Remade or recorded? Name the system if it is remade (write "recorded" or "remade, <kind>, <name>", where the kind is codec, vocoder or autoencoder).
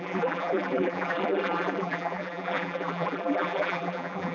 remade, vocoder, BigVGAN v2